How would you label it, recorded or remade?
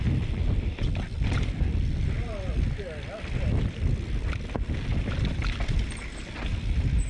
recorded